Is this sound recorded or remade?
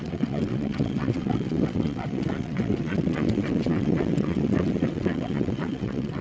remade